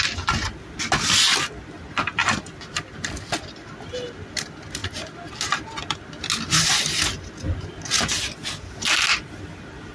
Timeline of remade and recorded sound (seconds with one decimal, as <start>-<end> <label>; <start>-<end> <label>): 0.0-2.2 recorded; 2.2-3.9 remade; 3.9-4.8 recorded; 4.8-5.7 remade; 5.7-9.9 recorded